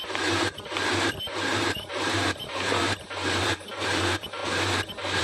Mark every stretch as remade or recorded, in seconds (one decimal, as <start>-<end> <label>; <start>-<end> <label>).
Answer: 0.0-4.4 remade; 4.4-5.2 recorded